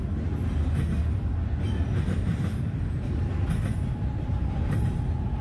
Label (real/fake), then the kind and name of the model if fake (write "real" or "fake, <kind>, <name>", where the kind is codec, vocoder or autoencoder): real